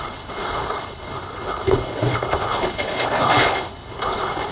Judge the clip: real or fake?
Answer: fake